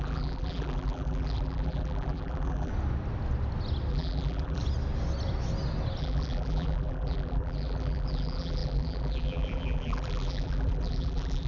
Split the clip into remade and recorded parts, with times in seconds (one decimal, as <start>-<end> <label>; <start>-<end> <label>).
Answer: 0.0-2.7 remade; 2.7-3.9 recorded; 3.9-4.6 remade; 4.6-6.0 recorded; 6.0-11.5 remade